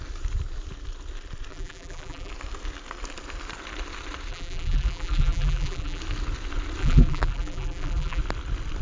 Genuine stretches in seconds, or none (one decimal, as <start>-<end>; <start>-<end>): 0.0-1.5; 2.3-4.3; 6.0-6.8; 8.2-8.8